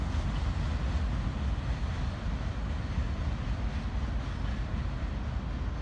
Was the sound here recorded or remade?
recorded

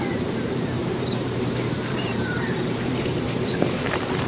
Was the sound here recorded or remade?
remade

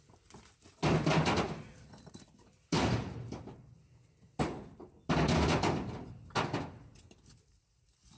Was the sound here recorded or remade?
recorded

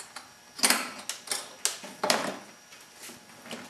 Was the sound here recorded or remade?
recorded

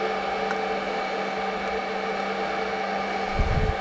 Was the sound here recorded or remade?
recorded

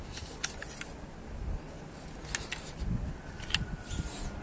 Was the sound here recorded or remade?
recorded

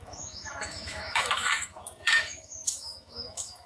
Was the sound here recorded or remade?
remade